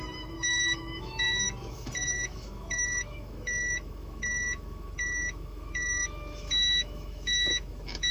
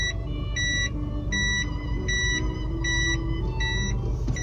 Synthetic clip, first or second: first